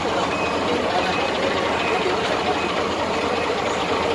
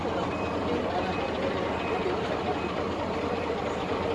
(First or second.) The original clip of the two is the second